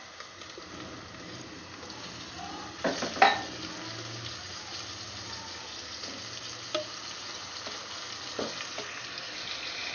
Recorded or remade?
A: recorded